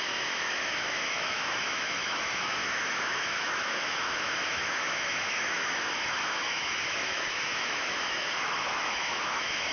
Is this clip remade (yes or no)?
yes